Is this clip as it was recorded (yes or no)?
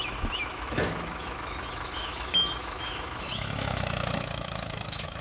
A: no